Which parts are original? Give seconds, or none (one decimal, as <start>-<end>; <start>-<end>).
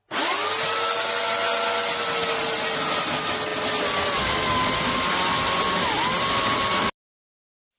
0.0-7.8